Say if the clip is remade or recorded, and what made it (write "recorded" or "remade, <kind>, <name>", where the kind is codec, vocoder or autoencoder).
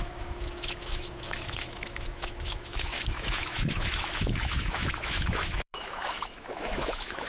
remade, autoencoder, DAC-VAE